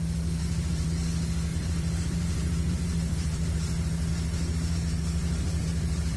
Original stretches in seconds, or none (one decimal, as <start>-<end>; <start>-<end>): 0.0-0.4; 0.9-1.5; 4.1-5.2